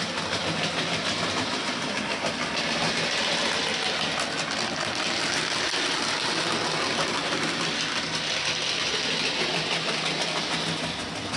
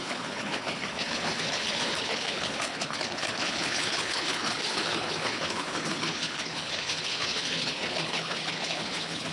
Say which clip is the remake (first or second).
second